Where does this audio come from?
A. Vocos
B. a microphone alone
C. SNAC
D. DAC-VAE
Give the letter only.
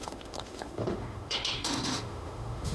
D